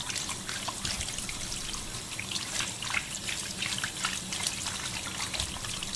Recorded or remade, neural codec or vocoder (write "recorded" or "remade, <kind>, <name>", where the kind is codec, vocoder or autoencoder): recorded